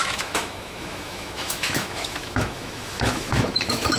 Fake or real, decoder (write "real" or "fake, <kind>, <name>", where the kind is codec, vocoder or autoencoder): fake, autoencoder, DAC-VAE